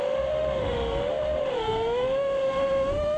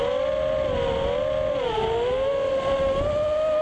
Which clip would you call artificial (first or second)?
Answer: first